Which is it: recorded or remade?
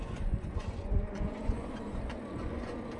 remade